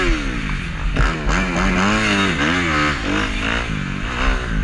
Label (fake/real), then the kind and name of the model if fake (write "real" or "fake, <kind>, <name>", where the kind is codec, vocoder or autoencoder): real